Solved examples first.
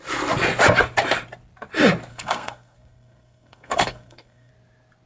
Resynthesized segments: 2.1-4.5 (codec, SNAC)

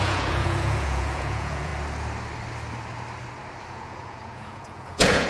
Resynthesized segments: 0.0-1.7 (vocoder, Vocos); 3.7-5.3

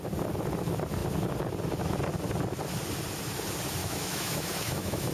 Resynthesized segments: 3.8-5.1 (autoencoder, DAC-VAE)

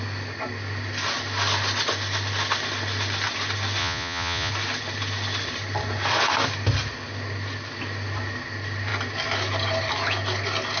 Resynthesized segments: 3.8-4.5 (vocoder, Vocos)

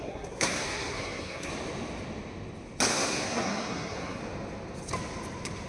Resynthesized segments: 0.0-1.5 (codec, SNAC); 2.9-4.2

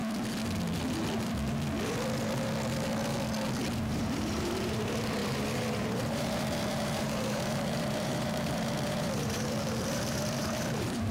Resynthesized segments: 3.8-11.1 (vocoder, BigVGAN v2)

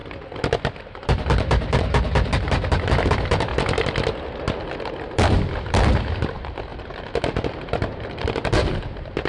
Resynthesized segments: 0.8-3.5 (vocoder, BigVGAN v2); 4.6-9.3

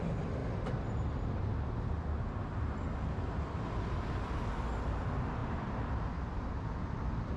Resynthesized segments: 0.4-1.4 (vocoder, BigVGAN v2); 5.4-6.5